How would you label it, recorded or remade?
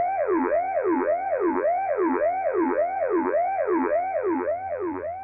remade